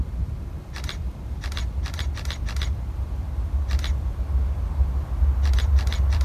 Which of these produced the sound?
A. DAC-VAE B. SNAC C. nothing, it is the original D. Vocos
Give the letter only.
C